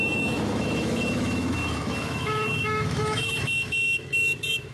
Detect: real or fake fake